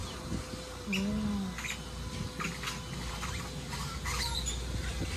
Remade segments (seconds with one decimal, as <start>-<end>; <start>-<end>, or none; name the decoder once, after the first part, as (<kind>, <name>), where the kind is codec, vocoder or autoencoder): none